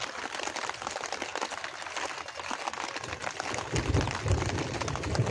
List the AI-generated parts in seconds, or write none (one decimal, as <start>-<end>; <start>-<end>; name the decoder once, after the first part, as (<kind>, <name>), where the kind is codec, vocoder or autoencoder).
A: none